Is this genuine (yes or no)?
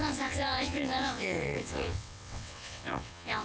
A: no